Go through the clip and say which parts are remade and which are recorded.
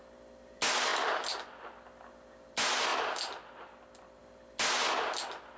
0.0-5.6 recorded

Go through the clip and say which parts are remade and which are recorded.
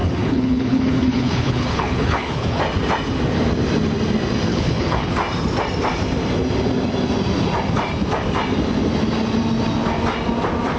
0.0-2.6 remade; 2.6-4.5 recorded; 4.5-5.1 remade; 5.1-10.8 recorded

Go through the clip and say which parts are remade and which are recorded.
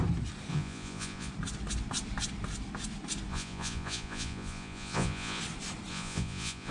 0.0-0.5 recorded; 0.5-1.3 remade; 1.3-3.3 recorded; 3.3-5.4 remade; 5.4-5.9 recorded; 5.9-6.7 remade